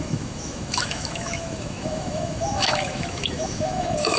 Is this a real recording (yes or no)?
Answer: no